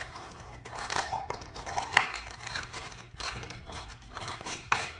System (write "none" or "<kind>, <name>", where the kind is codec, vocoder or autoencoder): codec, SNAC